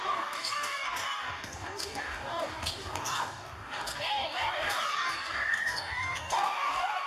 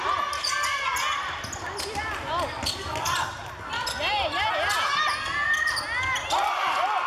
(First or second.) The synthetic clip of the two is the first